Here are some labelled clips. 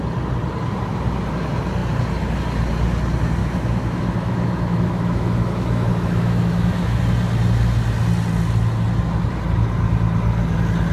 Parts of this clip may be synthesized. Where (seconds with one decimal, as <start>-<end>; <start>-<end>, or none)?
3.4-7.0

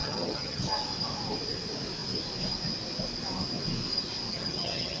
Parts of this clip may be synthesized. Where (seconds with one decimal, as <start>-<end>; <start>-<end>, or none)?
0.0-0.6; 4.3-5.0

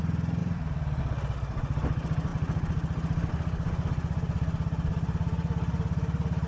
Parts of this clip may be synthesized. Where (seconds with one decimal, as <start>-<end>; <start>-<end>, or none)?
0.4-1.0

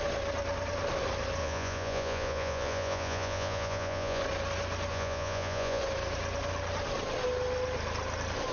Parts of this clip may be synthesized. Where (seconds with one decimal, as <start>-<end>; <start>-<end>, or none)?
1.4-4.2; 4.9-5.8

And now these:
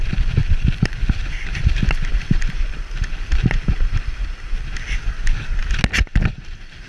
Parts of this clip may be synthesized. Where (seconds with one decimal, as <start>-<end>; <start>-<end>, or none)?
none

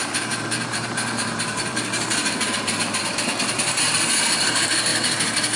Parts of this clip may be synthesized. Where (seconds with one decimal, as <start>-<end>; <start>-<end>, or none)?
0.0-4.9